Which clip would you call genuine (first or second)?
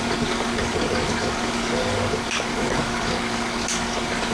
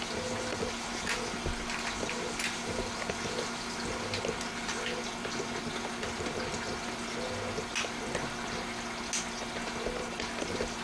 second